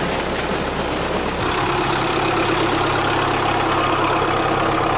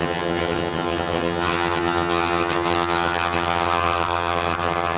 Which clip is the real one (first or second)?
first